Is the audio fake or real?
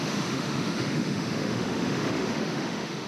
fake